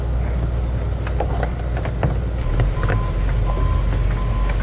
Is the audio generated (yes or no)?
no